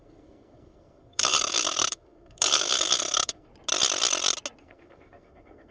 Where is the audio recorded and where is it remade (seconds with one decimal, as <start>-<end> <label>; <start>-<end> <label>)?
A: 0.0-3.5 remade; 3.5-4.6 recorded; 4.6-5.7 remade